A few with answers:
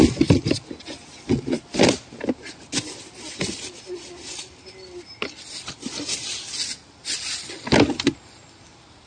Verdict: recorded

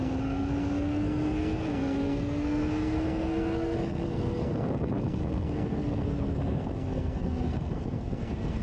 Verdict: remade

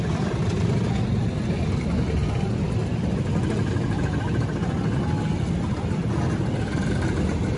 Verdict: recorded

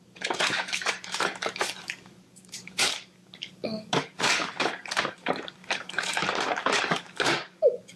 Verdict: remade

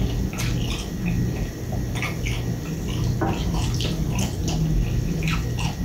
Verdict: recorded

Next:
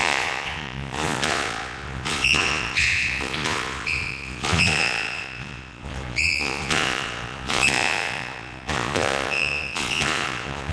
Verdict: remade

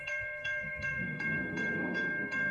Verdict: remade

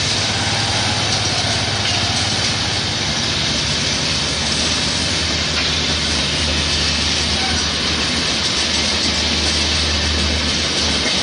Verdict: recorded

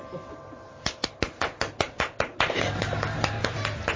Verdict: remade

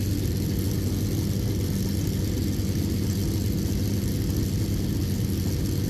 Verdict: recorded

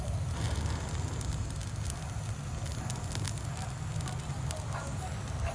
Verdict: recorded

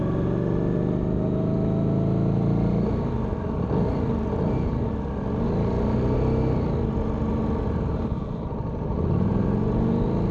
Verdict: recorded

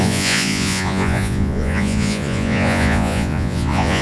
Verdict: remade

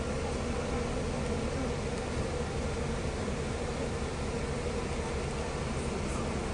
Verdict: recorded